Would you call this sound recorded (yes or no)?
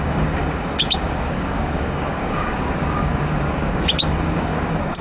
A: no